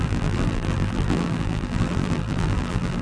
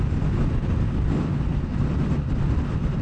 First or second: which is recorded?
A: second